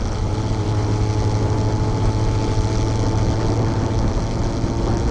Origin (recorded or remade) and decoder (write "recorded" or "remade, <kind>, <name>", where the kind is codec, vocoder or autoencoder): recorded